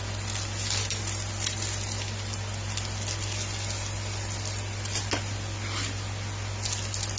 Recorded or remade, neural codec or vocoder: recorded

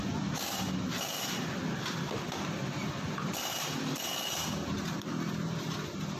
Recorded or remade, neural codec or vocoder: recorded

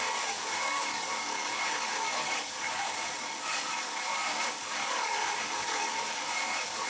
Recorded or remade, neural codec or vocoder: remade, codec, DAC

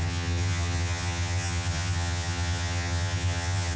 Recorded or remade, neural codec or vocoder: remade, vocoder, HiFi-GAN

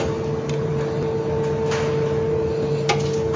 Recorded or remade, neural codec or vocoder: recorded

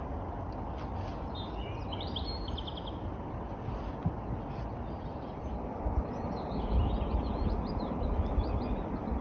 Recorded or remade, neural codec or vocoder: recorded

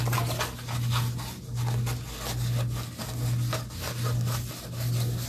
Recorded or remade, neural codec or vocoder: recorded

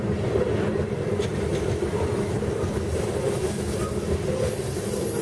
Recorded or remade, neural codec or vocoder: recorded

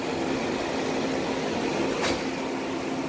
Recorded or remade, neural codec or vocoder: recorded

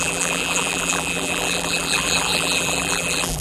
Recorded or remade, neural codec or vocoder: remade, vocoder, BigVGAN v2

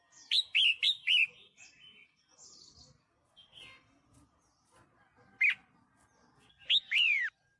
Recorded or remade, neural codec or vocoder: recorded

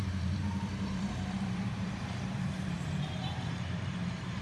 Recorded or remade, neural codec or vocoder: remade, vocoder, BigVGAN v2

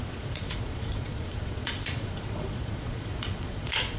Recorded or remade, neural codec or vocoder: remade, vocoder, Vocos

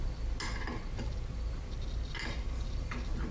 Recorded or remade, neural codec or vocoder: recorded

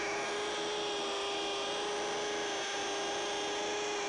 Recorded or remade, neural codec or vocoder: recorded